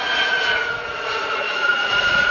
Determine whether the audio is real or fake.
fake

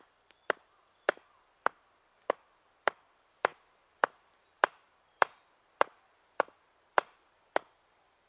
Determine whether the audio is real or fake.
fake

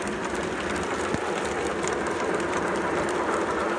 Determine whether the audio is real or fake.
real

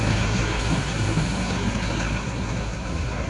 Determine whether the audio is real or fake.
fake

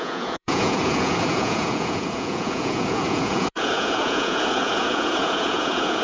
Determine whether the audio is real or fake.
fake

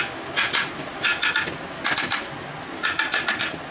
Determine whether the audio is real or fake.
real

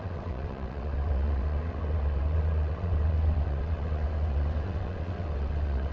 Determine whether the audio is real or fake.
fake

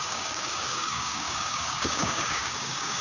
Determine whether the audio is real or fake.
fake